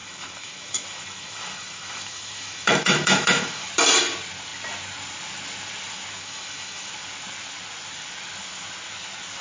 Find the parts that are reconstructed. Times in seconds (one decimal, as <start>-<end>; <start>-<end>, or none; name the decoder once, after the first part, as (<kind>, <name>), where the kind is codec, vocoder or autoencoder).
0.0-3.7 (autoencoder, DAC-VAE); 6.2-6.9